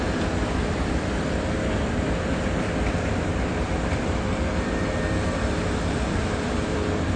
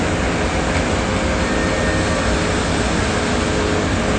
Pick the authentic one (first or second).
second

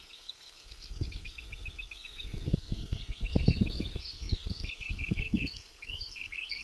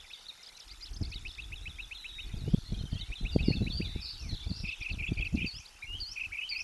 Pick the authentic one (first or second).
second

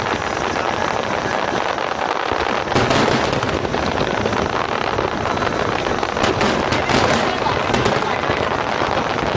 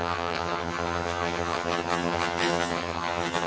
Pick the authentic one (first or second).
first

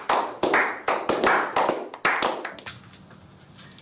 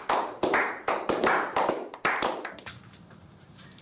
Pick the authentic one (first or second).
first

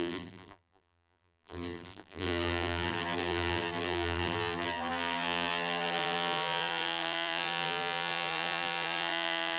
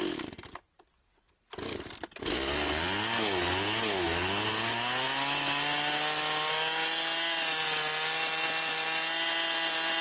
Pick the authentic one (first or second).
second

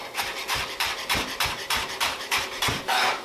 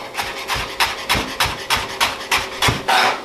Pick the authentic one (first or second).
second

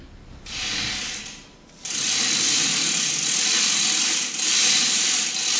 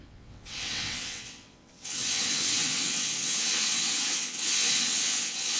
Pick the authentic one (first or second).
first